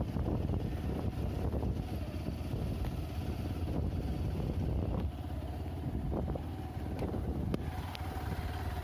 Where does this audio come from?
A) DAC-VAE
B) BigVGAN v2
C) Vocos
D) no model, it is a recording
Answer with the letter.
D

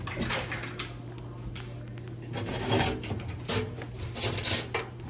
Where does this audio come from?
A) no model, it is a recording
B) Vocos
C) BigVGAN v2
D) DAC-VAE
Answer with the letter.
A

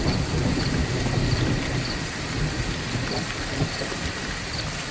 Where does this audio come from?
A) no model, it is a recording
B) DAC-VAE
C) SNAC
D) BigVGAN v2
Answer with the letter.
A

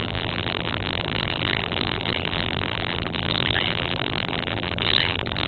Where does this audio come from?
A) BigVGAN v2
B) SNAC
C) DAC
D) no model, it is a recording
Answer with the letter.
A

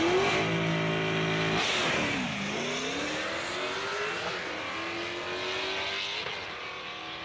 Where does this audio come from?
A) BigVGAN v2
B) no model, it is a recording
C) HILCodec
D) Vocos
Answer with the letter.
B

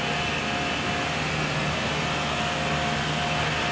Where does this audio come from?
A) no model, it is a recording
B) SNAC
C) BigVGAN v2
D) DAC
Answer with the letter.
A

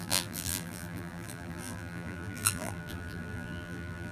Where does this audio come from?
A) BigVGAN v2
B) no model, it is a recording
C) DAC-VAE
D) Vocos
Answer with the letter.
A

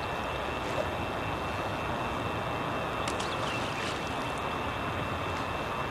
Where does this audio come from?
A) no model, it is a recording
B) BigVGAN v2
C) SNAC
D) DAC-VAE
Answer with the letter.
A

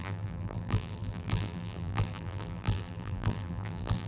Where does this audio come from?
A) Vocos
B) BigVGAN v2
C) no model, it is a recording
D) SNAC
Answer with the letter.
B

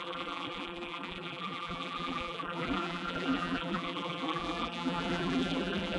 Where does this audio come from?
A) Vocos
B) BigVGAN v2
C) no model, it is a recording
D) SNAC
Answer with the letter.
B